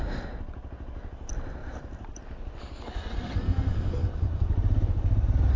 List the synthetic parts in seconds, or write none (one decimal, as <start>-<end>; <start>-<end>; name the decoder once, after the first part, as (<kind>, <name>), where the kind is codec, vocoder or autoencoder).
1.6-2.2 (vocoder, BigVGAN v2)